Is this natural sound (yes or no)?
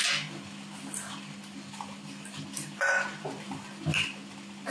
yes